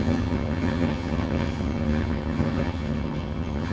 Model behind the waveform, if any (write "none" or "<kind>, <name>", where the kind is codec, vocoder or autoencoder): vocoder, HiFi-GAN